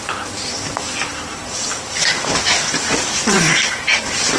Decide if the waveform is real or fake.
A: fake